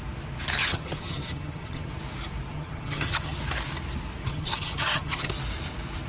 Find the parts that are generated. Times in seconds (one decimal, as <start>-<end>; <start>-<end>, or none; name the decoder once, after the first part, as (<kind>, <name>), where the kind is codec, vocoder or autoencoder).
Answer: 0.6-1.9 (vocoder, HiFi-GAN); 2.5-3.4; 4.3-5.3